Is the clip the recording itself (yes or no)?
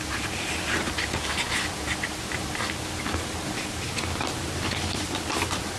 yes